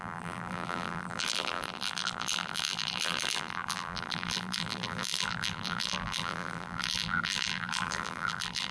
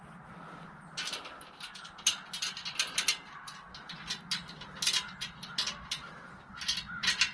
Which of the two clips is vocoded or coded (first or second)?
first